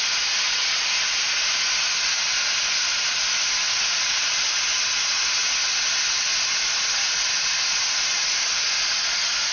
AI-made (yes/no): no